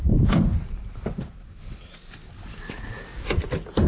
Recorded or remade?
recorded